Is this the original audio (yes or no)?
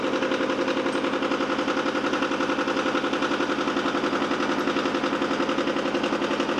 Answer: yes